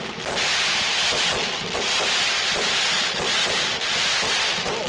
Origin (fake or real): real